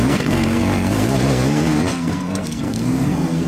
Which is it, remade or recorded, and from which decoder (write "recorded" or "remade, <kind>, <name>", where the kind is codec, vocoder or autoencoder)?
remade, codec, SNAC